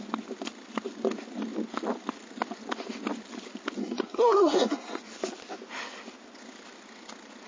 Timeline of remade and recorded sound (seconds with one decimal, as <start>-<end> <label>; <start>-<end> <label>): 0.0-3.8 recorded; 3.8-5.0 remade; 5.0-7.5 recorded